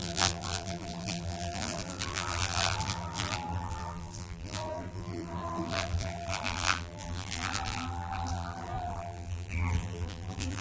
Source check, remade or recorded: remade